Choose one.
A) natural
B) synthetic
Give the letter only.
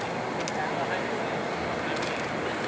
A